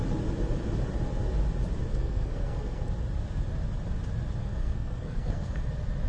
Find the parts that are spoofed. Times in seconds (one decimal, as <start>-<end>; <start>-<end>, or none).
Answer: 1.9-2.9; 4.4-5.6